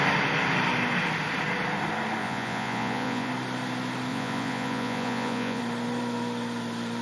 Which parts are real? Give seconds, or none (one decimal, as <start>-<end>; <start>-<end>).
0.0-2.2; 3.3-4.1; 5.6-7.0